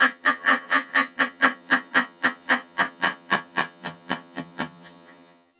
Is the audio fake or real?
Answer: fake